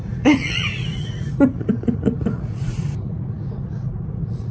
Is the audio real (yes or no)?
no